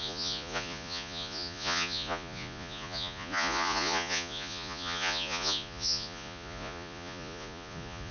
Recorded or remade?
remade